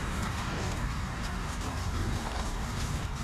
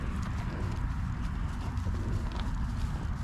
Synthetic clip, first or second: first